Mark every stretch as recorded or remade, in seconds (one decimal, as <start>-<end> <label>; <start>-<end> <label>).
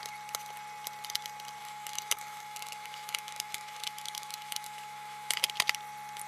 0.0-1.6 recorded; 1.6-5.4 remade; 5.4-6.3 recorded